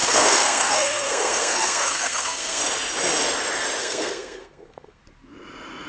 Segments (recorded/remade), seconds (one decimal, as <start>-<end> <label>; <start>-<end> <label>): 0.0-2.6 remade; 2.6-3.8 recorded; 3.8-5.0 remade; 5.0-5.9 recorded